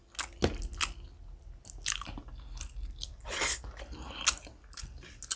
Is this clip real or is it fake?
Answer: real